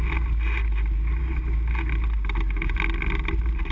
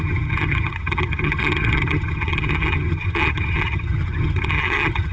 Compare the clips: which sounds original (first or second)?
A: first